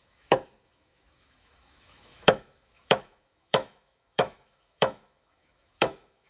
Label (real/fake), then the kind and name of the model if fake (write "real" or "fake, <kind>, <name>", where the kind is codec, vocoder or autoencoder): fake, autoencoder, DAC-VAE